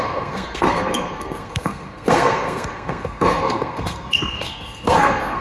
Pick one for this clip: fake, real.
fake